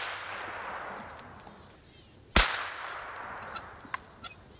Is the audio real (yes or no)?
yes